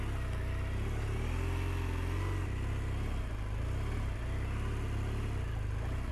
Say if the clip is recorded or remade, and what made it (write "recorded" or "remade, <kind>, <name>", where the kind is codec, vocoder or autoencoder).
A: recorded